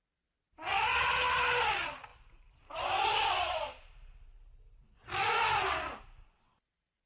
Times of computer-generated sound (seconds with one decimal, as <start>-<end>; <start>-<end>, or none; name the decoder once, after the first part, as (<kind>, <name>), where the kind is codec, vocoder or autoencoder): 0.7-1.7 (vocoder, BigVGAN v2); 2.1-6.4